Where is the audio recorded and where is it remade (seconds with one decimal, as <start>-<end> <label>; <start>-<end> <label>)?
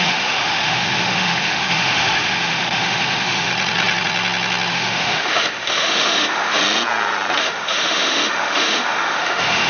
0.0-3.5 remade; 3.5-4.7 recorded; 4.7-6.6 remade; 6.6-7.4 recorded; 7.4-9.7 remade